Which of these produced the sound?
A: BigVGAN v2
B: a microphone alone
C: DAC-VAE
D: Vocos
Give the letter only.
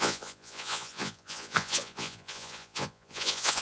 D